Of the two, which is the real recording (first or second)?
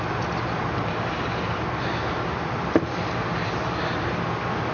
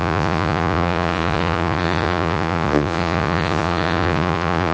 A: first